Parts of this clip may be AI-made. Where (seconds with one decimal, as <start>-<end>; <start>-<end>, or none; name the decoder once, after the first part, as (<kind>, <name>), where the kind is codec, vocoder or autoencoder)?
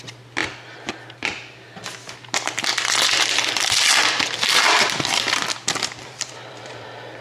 2.7-7.2 (vocoder, BigVGAN v2)